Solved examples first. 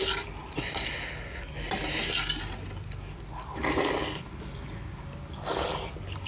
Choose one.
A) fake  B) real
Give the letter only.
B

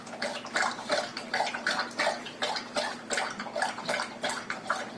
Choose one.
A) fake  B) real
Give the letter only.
B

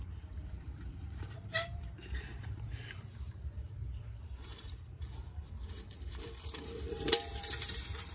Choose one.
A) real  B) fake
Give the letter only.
B